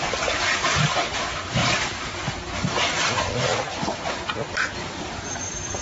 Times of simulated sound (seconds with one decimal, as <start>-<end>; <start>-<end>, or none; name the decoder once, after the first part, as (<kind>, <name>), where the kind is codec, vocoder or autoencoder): 1.6-2.3 (vocoder, BigVGAN v2); 3.5-4.0